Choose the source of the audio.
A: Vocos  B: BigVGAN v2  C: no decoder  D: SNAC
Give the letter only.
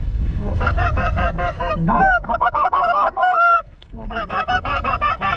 D